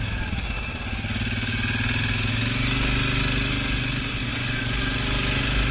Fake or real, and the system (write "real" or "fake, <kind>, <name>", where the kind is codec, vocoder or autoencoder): real